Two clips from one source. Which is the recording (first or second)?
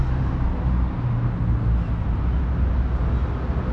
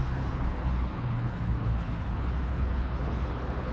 first